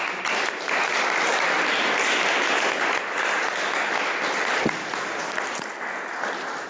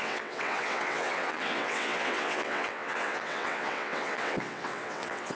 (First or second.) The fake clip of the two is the second